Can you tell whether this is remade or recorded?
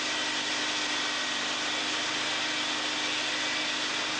recorded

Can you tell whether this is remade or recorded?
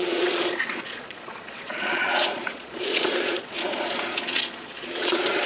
remade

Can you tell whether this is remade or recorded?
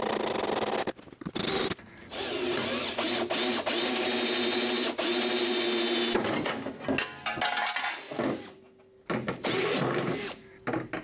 recorded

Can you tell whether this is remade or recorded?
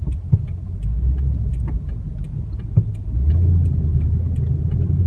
recorded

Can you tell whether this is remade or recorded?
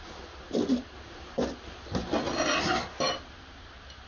recorded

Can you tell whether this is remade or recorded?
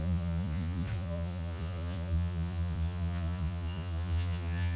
remade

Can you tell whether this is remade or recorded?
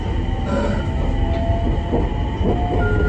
recorded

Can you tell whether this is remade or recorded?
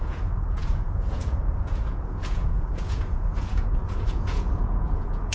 remade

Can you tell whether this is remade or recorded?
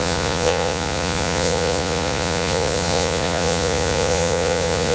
remade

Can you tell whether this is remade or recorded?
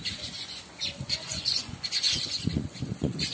remade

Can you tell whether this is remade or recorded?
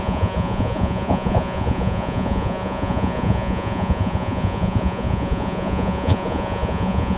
remade